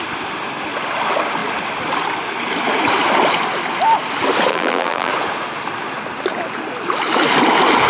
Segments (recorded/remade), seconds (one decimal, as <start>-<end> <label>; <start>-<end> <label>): 0.0-4.5 recorded; 4.5-5.1 remade; 5.1-7.9 recorded